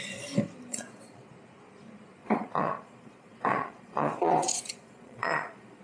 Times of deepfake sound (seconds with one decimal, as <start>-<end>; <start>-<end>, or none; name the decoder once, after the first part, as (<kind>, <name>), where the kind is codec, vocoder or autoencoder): 0.7-1.3 (vocoder, Vocos); 2.2-5.8